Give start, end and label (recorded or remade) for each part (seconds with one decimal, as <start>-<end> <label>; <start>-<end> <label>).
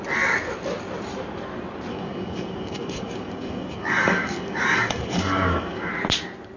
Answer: 0.0-1.9 recorded; 1.9-5.9 remade; 5.9-6.6 recorded